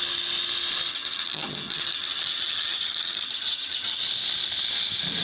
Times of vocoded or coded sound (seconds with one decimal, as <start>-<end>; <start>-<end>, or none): 0.9-4.0